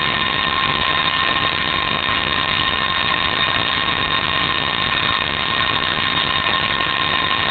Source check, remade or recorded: remade